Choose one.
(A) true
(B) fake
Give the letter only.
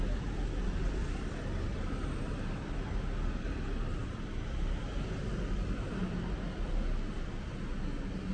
A